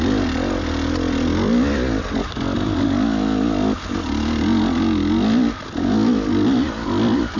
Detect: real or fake real